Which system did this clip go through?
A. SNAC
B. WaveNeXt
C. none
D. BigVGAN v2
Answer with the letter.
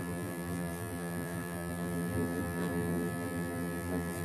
D